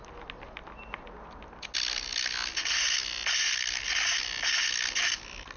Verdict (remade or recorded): recorded